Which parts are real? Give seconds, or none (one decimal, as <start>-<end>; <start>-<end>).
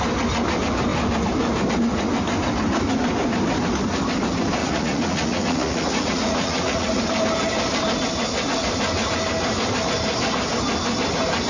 0.0-4.6; 7.0-11.5